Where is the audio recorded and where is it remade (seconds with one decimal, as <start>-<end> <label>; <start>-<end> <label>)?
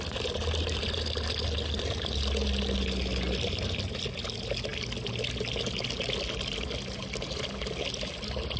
0.0-8.6 recorded